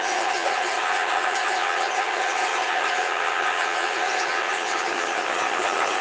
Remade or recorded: remade